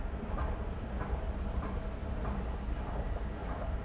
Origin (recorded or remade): recorded